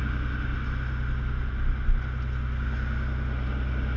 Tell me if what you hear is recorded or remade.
recorded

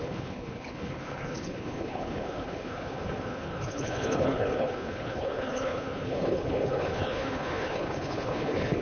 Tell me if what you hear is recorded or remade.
remade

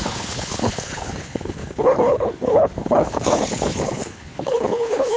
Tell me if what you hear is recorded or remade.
remade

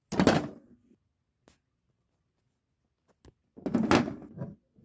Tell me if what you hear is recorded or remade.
recorded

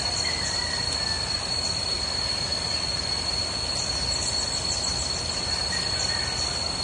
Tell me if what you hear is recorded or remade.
recorded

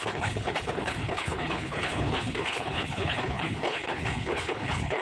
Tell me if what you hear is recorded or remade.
remade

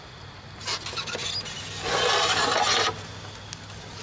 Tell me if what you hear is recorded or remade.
recorded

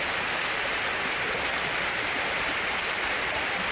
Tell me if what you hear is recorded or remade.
recorded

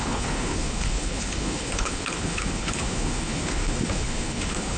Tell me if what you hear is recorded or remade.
remade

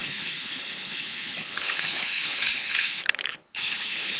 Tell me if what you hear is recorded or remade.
remade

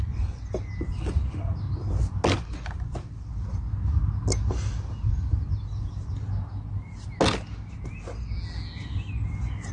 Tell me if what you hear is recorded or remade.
recorded